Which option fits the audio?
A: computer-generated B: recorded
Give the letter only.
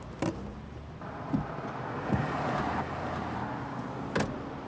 B